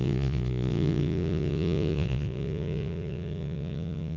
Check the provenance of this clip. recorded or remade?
remade